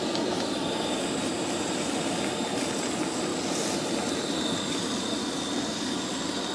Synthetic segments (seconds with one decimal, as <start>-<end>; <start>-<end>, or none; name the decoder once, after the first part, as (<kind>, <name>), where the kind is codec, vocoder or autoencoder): none